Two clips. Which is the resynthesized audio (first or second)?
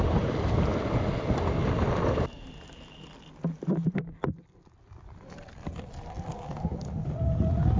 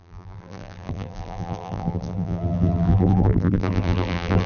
second